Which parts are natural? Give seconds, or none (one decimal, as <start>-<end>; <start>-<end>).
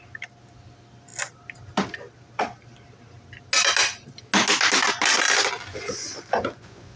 0.0-5.7